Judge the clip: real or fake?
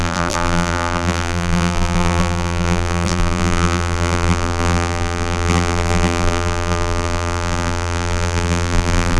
fake